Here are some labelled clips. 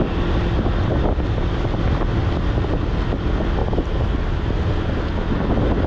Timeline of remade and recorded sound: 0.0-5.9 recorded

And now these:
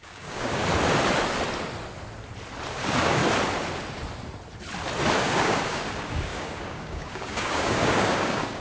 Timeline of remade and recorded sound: 0.0-0.6 remade; 0.6-2.7 recorded; 2.7-3.2 remade; 3.2-5.2 recorded; 5.2-8.6 remade

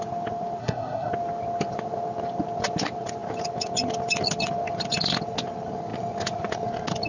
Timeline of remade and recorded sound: 0.0-0.6 recorded; 0.6-1.1 remade; 1.1-7.1 recorded